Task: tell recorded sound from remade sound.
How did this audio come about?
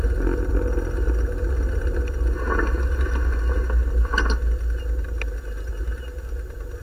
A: recorded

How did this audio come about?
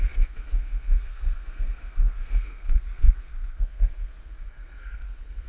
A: remade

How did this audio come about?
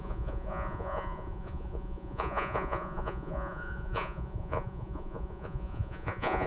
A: remade